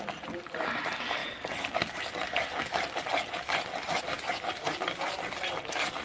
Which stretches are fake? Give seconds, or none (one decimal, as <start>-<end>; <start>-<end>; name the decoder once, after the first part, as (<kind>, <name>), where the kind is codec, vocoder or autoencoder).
none